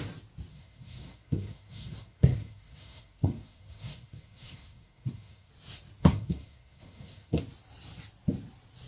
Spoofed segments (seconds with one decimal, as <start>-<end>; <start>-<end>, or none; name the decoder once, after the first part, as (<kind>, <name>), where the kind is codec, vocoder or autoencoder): 0.5-5.5 (codec, SNAC); 6.0-7.4